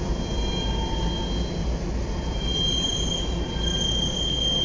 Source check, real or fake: real